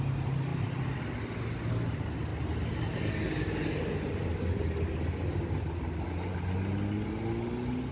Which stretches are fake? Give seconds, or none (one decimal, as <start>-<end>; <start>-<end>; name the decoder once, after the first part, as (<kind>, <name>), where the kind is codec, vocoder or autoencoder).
none